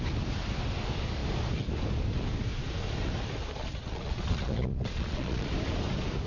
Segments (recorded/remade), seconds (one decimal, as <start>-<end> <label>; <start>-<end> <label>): 0.0-3.6 recorded; 3.6-5.5 remade; 5.5-6.3 recorded